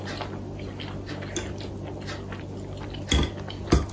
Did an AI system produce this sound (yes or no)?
no